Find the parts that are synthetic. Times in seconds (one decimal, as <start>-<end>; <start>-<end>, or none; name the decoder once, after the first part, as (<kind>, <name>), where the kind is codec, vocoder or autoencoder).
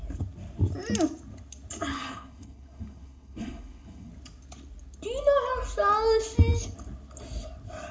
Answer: 1.9-4.1 (codec, HILCodec)